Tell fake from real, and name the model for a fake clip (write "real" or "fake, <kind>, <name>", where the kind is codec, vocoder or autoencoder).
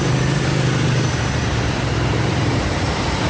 fake, vocoder, BigVGAN v2